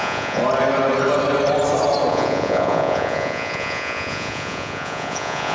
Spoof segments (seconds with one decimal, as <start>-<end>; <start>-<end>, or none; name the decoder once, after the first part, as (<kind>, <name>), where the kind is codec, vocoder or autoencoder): 0.0-0.4 (vocoder, Vocos); 2.1-5.5